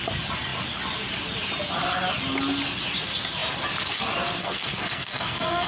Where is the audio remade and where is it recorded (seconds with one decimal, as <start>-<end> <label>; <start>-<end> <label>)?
0.0-4.4 recorded; 4.4-5.7 remade